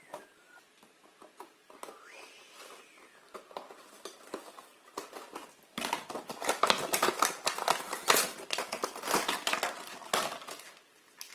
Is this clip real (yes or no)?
yes